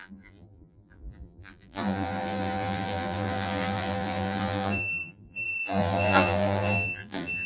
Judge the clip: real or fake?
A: fake